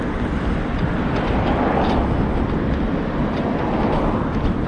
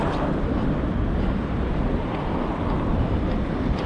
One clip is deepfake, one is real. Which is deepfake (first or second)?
second